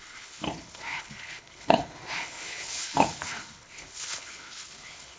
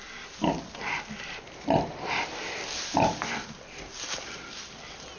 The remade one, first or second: first